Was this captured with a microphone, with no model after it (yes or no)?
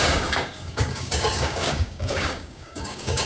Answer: no